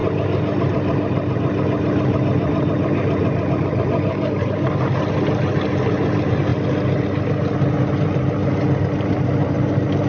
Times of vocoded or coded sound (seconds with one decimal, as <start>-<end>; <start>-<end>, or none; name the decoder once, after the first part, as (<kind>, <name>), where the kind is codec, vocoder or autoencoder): none